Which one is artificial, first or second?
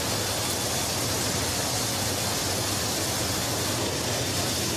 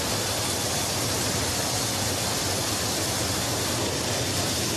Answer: second